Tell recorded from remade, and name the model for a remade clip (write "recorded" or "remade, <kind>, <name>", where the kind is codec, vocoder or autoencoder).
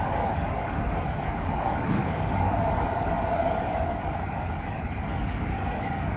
remade, codec, DAC